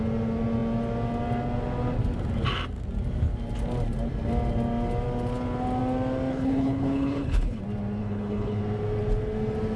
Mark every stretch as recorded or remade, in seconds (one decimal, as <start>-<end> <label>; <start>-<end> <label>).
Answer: 0.0-6.3 recorded; 6.3-7.6 remade; 7.6-8.0 recorded; 8.0-8.6 remade; 8.6-9.8 recorded